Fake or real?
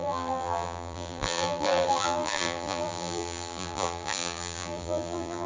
fake